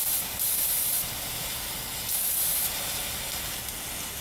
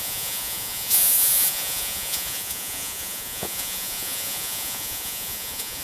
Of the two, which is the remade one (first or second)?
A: second